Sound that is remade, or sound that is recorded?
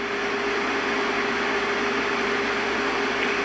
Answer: recorded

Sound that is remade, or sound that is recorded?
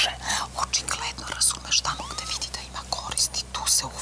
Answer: recorded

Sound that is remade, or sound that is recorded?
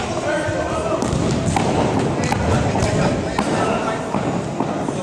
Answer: recorded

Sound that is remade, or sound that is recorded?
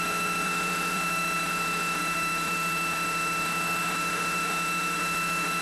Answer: remade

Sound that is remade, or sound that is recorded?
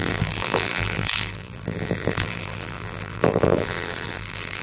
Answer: remade